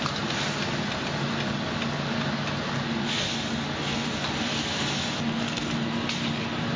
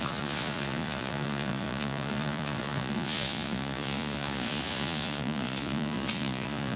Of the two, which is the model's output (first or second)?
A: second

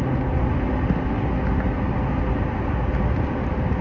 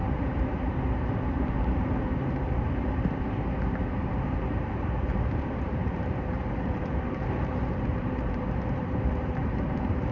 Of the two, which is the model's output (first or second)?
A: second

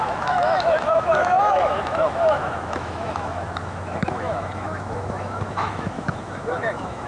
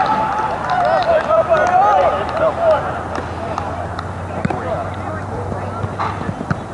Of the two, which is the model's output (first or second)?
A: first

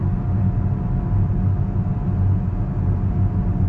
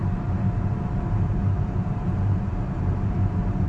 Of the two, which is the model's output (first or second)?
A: second